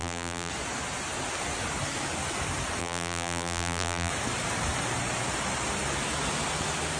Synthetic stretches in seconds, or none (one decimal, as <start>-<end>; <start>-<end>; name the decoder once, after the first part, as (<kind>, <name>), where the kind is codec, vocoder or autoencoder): 0.0-0.5 (vocoder, BigVGAN v2); 2.8-4.1